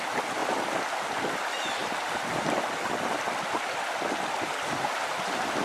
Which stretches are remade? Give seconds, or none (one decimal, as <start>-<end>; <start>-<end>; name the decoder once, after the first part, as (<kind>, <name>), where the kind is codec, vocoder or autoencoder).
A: 0.4-1.4 (vocoder, BigVGAN v2)